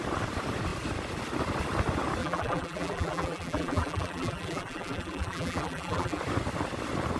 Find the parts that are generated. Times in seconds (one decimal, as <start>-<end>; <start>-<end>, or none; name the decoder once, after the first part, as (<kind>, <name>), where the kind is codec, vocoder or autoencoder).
2.2-6.2 (vocoder, BigVGAN v2)